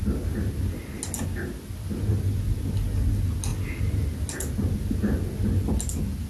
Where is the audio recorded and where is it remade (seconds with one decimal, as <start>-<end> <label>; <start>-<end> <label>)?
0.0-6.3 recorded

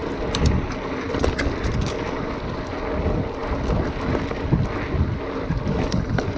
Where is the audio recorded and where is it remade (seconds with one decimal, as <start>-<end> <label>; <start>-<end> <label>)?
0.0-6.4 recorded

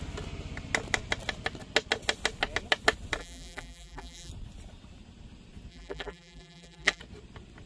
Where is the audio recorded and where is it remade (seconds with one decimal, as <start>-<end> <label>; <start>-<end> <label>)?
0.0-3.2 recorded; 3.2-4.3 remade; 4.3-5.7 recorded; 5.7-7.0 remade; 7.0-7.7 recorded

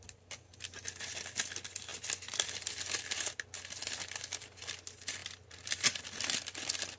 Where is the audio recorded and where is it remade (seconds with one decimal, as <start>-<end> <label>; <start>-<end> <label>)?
0.0-5.2 recorded; 5.2-6.0 remade; 6.0-7.0 recorded

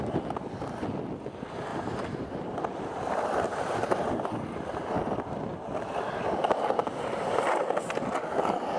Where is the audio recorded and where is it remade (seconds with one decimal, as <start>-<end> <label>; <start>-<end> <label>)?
0.0-1.7 recorded; 1.7-4.9 remade; 4.9-8.8 recorded

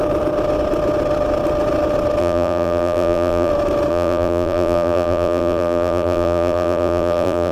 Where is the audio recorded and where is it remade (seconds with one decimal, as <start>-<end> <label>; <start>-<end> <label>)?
0.0-2.2 recorded; 2.2-3.5 remade; 3.5-3.9 recorded; 3.9-7.5 remade

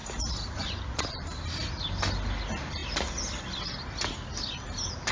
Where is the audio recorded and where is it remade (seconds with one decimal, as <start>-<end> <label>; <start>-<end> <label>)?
0.0-5.1 recorded

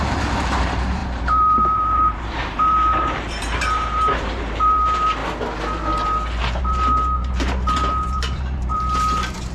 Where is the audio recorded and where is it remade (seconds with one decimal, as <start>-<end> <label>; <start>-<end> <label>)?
0.0-5.2 remade; 5.2-6.6 recorded; 6.6-9.5 remade